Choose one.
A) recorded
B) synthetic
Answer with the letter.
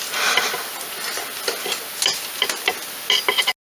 A